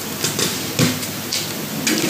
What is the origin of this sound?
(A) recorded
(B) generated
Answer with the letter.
A